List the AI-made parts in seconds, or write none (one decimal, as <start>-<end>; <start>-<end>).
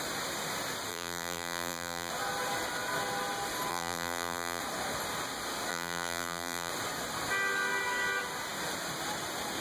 0.9-2.1; 3.7-4.6; 5.7-6.7